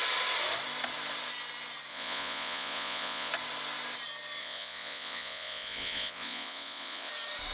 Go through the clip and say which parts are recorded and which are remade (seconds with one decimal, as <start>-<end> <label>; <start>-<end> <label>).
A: 0.0-1.9 recorded; 1.9-3.3 remade; 3.3-4.4 recorded; 4.4-7.1 remade; 7.1-7.5 recorded